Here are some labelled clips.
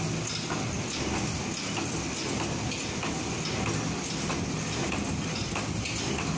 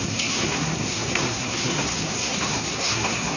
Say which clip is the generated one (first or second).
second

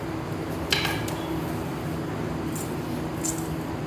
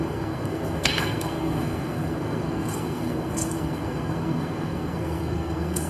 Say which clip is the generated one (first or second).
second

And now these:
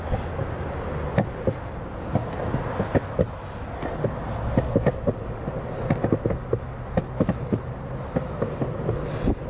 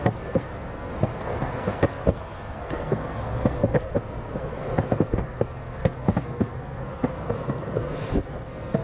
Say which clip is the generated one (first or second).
second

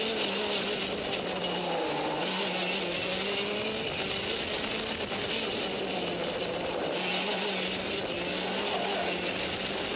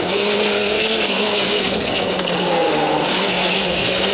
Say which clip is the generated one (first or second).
second